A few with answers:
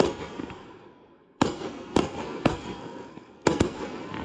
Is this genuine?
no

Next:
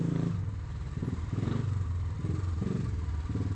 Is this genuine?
no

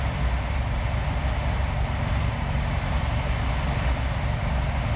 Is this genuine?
yes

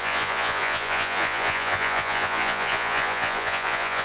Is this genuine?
no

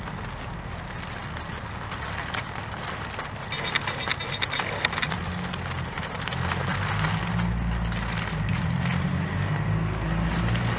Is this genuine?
yes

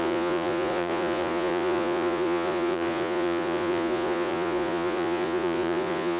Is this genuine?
no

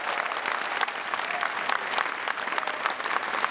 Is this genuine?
yes